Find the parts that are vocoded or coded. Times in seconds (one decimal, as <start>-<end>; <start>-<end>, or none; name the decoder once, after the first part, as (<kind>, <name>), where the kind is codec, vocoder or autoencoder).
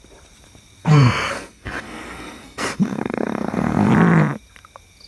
0.8-3.9 (codec, SNAC)